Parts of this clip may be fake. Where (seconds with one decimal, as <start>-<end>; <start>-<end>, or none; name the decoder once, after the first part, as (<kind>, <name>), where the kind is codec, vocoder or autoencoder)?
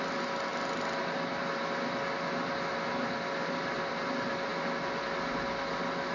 none